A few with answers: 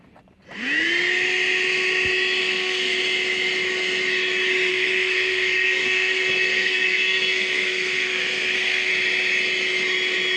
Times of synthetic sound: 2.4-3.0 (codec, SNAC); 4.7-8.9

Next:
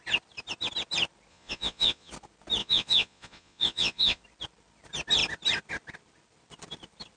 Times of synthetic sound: 1.3-2.1 (vocoder, Vocos); 2.6-4.2

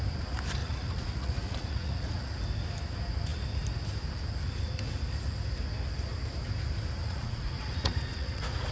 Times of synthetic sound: 0.6-2.3 (vocoder, Vocos); 7.0-8.7